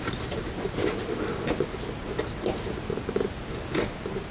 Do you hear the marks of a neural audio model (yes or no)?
no